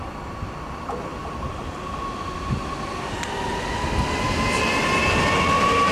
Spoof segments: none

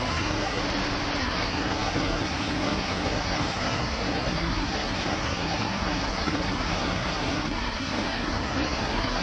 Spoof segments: 0.0-0.6; 1.2-9.2

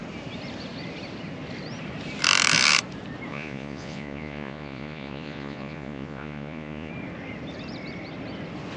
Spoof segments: 3.3-6.9